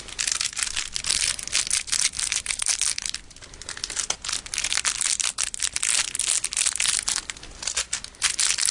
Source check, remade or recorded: recorded